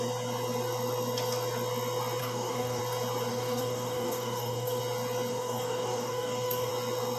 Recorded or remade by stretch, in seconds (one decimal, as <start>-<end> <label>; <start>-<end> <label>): 0.0-2.2 recorded; 2.2-2.8 remade; 2.8-3.3 recorded; 3.3-4.8 remade; 4.8-5.3 recorded; 5.3-6.7 remade; 6.7-7.2 recorded